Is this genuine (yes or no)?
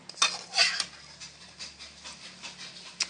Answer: yes